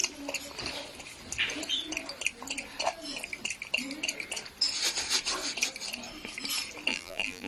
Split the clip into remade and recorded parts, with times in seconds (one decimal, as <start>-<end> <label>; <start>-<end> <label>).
0.0-6.9 recorded; 6.9-7.5 remade